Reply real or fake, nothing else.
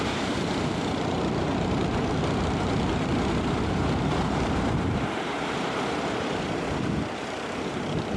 fake